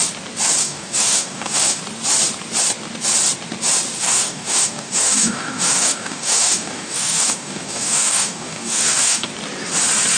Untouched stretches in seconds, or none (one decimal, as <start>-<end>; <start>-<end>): 0.0-0.6; 1.8-4.0; 9.3-10.2